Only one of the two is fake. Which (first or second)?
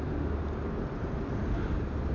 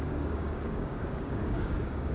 second